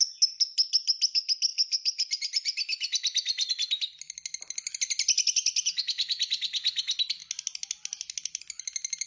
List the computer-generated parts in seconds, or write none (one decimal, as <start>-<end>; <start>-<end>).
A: none